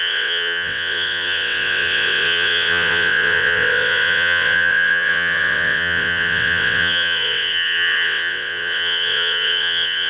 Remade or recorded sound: remade